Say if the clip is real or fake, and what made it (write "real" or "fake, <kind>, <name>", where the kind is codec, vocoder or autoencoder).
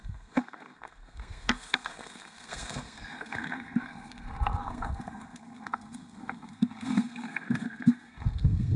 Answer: fake, codec, SNAC